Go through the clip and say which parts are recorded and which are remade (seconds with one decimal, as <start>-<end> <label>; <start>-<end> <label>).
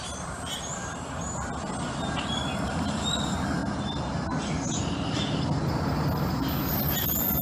0.0-0.8 remade; 0.8-2.7 recorded; 2.7-3.6 remade; 3.6-6.7 recorded; 6.7-7.4 remade